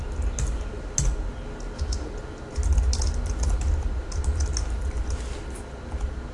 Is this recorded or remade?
recorded